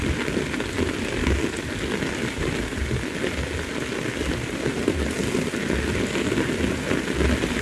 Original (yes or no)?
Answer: yes